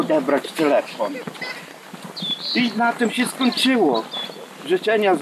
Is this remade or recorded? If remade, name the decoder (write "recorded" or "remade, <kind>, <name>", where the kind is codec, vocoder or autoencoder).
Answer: recorded